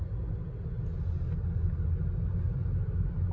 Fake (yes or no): no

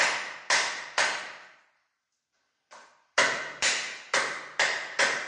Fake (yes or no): no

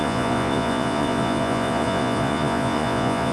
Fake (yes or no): yes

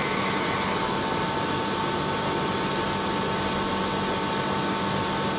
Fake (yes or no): no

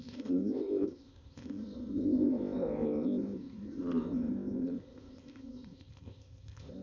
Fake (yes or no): yes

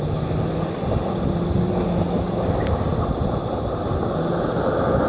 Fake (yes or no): no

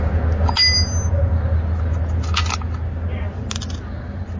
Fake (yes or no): no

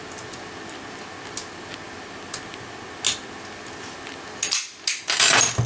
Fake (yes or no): no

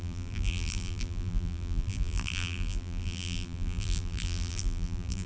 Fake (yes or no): yes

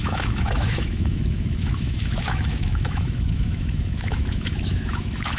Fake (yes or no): yes